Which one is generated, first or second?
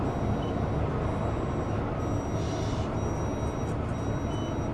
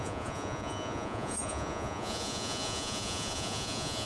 second